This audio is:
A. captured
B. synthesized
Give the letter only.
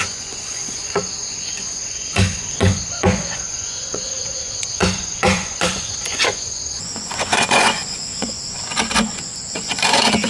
B